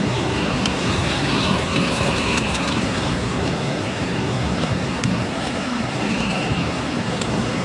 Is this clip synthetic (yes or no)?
yes